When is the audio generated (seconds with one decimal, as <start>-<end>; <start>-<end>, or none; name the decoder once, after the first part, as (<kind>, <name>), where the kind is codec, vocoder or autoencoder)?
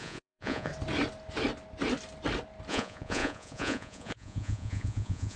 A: 0.0-0.7 (vocoder, Vocos); 2.7-5.4